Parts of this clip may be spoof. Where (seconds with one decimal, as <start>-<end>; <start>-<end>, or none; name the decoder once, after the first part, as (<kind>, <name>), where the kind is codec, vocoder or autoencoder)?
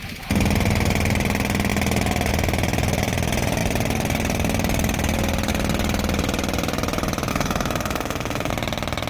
7.3-8.5 (autoencoder, DAC-VAE)